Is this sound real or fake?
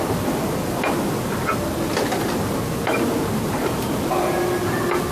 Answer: real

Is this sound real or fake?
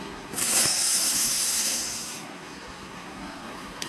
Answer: fake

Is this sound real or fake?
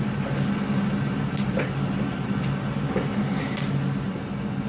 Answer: real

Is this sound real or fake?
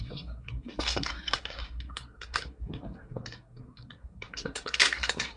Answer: fake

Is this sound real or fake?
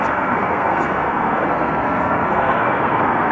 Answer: fake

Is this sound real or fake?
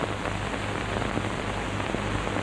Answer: real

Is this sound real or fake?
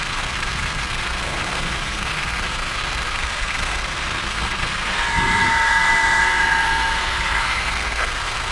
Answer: fake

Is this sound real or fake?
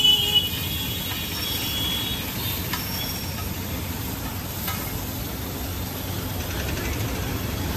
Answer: real